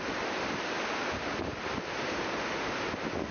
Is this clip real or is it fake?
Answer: real